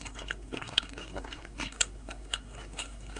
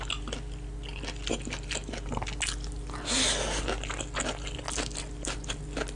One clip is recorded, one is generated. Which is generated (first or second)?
first